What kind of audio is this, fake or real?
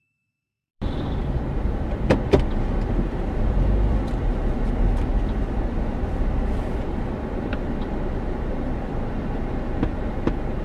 fake